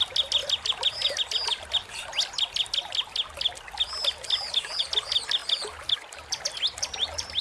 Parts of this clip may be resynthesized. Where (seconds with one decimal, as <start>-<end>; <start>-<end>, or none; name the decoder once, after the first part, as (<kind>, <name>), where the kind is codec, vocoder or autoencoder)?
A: none